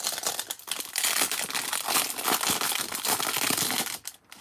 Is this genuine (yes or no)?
yes